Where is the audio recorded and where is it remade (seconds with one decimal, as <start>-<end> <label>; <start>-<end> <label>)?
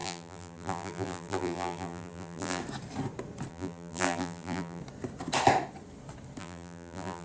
0.0-2.6 remade; 2.6-3.5 recorded; 3.5-4.8 remade; 4.8-6.4 recorded; 6.4-7.2 remade